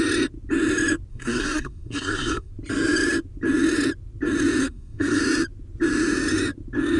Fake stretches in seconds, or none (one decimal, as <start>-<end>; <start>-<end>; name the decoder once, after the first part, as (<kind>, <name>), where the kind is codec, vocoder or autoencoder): 1.1-2.5 (codec, SNAC); 4.6-5.2